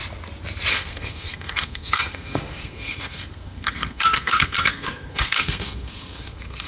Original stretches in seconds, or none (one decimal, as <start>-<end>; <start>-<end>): 0.0-0.7